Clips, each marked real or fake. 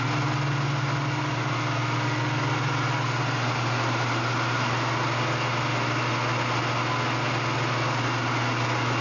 real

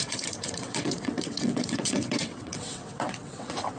fake